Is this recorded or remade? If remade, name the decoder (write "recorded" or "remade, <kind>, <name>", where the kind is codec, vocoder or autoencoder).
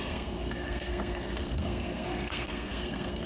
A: remade, codec, SNAC